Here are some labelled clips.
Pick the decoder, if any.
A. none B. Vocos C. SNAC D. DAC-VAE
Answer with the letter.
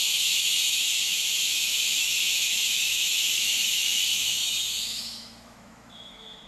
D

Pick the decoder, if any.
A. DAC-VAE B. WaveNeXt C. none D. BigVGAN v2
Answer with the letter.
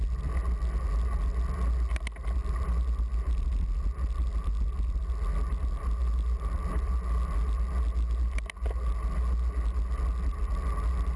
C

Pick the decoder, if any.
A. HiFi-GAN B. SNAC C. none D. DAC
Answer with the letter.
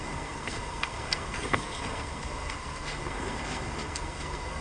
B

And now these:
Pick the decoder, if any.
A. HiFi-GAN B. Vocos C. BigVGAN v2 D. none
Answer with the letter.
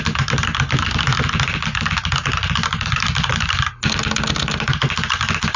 D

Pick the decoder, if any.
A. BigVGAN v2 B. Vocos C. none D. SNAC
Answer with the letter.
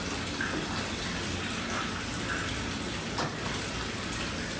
C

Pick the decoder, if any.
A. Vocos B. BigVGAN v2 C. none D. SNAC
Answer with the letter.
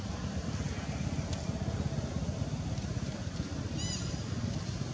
C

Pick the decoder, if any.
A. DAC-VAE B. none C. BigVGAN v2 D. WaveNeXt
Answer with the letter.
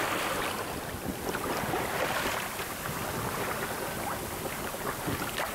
B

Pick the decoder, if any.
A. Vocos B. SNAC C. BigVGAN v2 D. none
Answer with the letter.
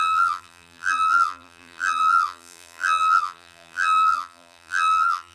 C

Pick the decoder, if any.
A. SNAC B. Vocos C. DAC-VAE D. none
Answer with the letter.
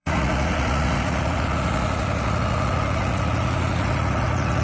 B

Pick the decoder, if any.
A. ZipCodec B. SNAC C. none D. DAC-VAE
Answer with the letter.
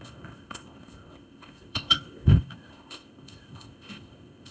A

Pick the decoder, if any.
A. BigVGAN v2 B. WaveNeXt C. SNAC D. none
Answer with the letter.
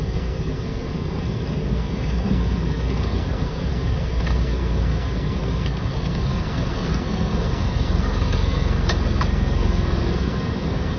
C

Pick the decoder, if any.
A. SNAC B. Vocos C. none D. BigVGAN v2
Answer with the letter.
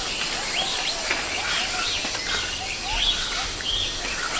C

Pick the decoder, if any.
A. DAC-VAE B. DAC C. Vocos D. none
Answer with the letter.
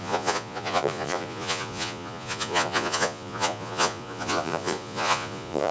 C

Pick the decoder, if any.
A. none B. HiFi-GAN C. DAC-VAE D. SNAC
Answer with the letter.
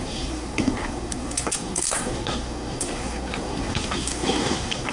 D